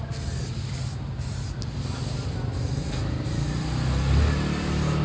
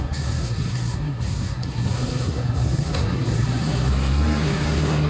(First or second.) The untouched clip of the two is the first